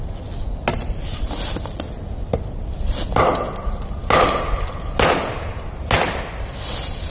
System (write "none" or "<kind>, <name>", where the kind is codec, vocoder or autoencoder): none